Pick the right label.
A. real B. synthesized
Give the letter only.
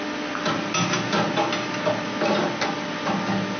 A